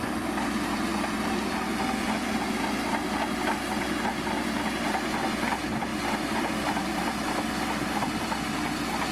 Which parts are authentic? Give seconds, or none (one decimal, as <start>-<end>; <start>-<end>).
0.0-9.1